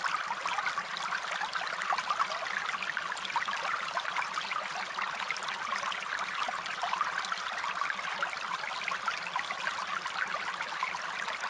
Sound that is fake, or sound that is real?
real